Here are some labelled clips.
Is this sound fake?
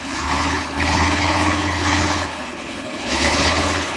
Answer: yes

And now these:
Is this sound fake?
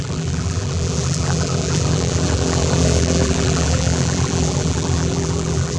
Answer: yes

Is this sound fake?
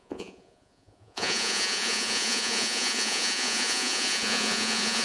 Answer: yes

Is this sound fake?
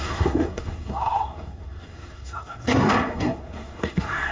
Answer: yes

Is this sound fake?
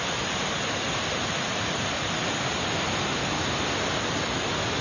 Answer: no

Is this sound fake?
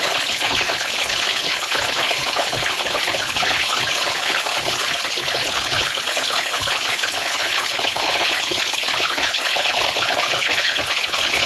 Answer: yes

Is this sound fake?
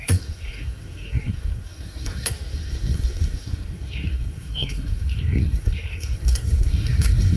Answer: yes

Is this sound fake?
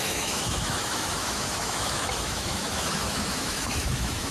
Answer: yes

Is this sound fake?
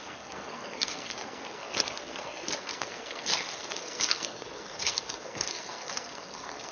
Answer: yes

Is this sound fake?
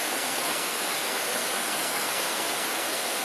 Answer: yes